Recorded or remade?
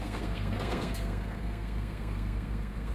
remade